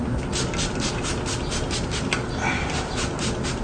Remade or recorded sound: recorded